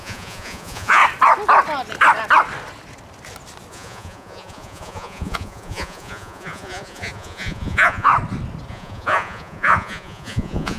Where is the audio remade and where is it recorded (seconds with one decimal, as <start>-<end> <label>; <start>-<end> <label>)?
0.0-1.0 remade; 1.0-3.7 recorded; 3.7-8.1 remade; 8.1-8.7 recorded; 8.7-10.8 remade